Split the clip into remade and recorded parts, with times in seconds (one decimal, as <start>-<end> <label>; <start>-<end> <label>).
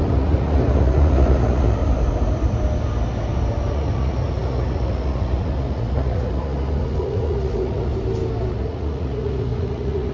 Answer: 0.0-1.8 remade; 1.8-3.7 recorded; 3.7-7.9 remade; 7.9-8.5 recorded; 8.5-10.1 remade